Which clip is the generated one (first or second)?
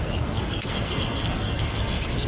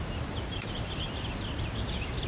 first